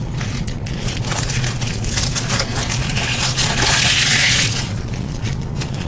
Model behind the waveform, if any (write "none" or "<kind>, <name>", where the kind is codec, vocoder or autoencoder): vocoder, Vocos